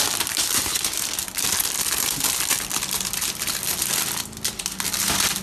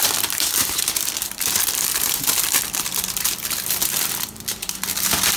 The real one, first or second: first